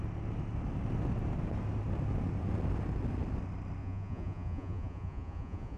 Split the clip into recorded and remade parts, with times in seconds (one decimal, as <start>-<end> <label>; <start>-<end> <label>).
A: 0.0-3.8 recorded; 3.8-5.8 remade